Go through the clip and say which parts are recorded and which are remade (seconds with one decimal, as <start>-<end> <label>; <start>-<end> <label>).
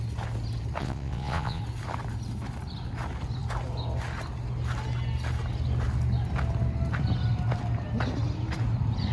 0.0-0.8 recorded; 0.8-1.6 remade; 1.6-9.1 recorded